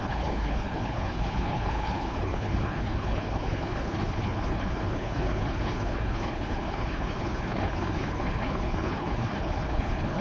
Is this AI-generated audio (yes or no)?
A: yes